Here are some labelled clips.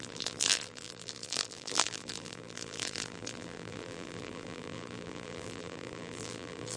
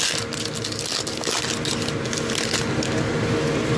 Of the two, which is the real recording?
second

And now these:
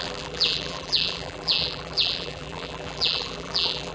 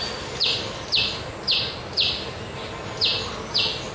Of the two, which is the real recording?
second